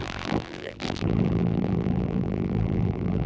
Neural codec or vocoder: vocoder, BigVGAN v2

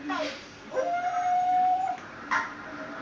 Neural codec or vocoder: vocoder, BigVGAN v2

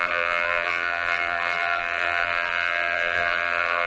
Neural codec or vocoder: vocoder, BigVGAN v2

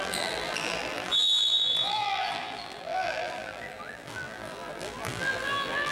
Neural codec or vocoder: vocoder, BigVGAN v2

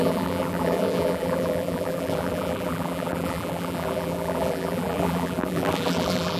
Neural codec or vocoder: vocoder, BigVGAN v2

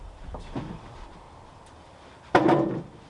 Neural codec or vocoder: vocoder, BigVGAN v2